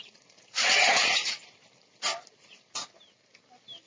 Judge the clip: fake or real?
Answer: real